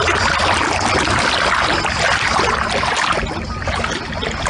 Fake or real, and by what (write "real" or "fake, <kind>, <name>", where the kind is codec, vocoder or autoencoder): real